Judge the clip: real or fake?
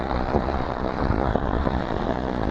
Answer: fake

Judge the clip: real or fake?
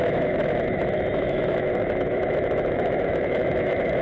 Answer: fake